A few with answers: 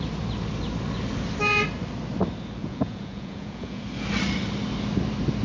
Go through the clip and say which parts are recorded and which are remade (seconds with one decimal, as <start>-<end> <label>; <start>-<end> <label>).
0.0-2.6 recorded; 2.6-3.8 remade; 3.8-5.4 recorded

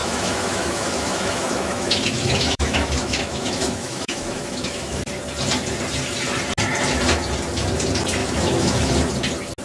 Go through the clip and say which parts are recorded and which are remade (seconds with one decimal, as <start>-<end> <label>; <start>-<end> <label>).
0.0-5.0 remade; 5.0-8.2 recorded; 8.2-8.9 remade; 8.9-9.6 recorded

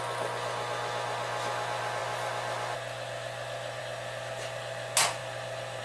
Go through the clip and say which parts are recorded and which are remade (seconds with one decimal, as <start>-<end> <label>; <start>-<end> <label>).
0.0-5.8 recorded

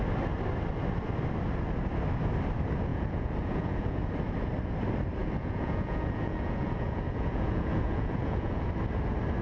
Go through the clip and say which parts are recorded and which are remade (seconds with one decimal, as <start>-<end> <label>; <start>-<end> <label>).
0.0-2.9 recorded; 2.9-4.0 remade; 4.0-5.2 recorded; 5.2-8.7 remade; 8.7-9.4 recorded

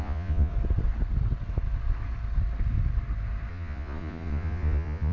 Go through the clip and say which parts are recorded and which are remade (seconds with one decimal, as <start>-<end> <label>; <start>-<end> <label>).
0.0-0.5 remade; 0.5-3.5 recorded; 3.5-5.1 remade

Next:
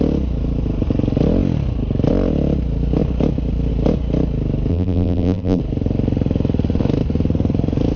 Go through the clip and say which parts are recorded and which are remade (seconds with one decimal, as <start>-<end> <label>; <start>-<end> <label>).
0.0-4.7 recorded; 4.7-5.6 remade; 5.6-8.0 recorded

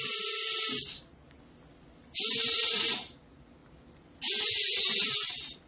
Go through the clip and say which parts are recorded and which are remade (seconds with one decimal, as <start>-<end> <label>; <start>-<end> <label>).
0.0-5.7 recorded

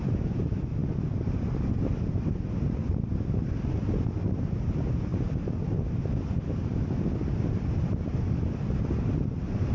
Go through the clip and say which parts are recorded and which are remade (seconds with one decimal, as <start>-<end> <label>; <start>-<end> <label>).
0.0-9.7 recorded